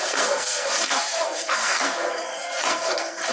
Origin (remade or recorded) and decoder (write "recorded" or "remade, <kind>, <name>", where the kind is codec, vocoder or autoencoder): remade, codec, SNAC